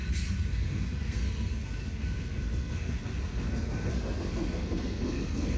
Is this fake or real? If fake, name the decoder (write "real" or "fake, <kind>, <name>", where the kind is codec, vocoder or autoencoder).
fake, codec, SNAC